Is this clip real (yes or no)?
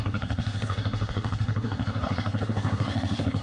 no